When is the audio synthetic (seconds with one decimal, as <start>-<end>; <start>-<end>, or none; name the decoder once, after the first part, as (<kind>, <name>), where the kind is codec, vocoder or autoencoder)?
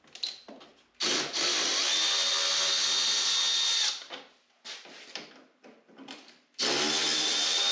none